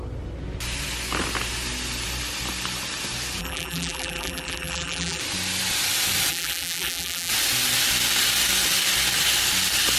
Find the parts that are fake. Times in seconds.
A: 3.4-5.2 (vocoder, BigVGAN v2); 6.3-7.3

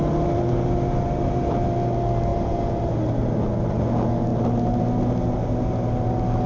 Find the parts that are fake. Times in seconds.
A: 2.3-3.1 (vocoder, BigVGAN v2)